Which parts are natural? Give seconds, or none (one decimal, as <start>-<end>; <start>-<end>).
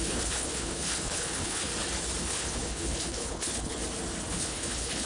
1.7-2.2; 3.8-4.3